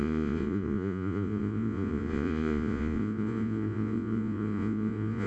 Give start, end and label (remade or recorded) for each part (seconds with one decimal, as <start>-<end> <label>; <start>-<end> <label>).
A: 0.0-5.3 remade

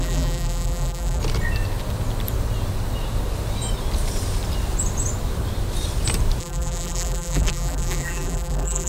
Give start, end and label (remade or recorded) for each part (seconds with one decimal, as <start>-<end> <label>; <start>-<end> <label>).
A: 0.0-1.2 remade; 1.2-6.4 recorded; 6.4-8.9 remade

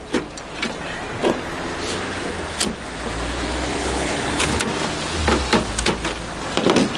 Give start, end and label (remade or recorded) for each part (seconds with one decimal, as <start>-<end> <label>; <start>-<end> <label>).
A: 0.0-3.8 recorded; 3.8-4.6 remade; 4.6-7.0 recorded